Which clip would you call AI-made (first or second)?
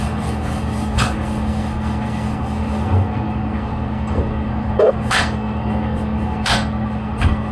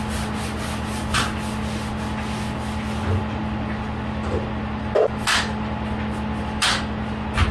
first